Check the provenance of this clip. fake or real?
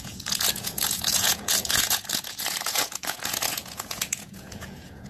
fake